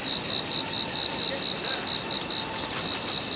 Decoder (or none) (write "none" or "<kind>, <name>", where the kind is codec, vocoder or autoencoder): none